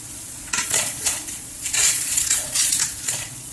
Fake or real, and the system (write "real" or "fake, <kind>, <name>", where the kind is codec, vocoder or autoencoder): fake, vocoder, Vocos